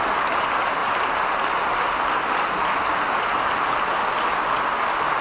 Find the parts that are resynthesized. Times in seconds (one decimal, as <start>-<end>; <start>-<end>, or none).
none